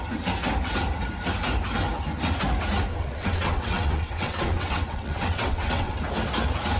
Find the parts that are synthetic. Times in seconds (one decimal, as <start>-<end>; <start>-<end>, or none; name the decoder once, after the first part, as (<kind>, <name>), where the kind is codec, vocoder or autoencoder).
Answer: 2.9-6.0 (vocoder, WaveNeXt)